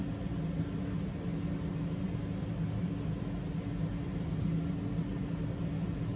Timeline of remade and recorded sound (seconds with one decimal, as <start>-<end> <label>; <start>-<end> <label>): 0.0-6.2 recorded